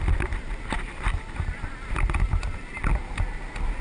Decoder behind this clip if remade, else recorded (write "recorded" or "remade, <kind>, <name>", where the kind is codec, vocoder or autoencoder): recorded